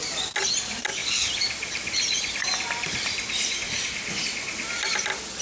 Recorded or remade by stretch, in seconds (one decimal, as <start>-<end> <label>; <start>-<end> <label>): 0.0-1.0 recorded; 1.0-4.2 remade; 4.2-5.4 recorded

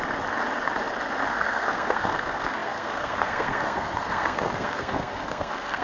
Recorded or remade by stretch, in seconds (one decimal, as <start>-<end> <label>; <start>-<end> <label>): 0.0-1.3 recorded; 1.3-5.8 remade

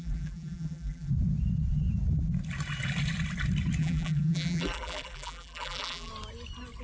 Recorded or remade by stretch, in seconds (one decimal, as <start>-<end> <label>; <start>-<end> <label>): 0.0-1.1 remade; 1.1-3.8 recorded; 3.8-6.1 remade; 6.1-6.8 recorded

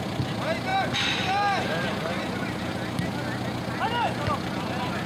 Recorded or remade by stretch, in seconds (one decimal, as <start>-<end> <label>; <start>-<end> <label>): 0.0-5.1 recorded